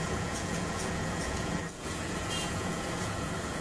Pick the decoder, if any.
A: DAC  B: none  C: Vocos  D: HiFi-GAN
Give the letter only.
C